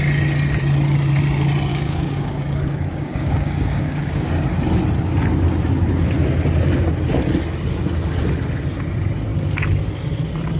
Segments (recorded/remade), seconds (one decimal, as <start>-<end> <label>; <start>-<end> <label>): 0.0-1.7 recorded; 1.7-4.3 remade; 4.3-10.6 recorded